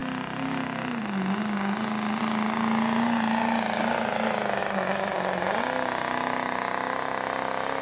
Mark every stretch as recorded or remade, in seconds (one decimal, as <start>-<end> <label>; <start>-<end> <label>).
0.0-7.8 recorded